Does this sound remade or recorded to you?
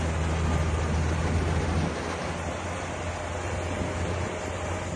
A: recorded